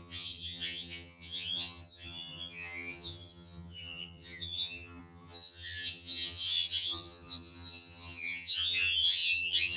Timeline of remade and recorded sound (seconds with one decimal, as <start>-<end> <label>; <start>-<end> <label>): 0.0-9.8 remade